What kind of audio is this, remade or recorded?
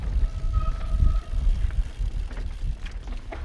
recorded